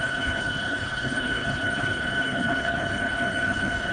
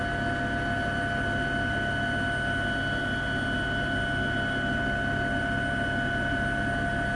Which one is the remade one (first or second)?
first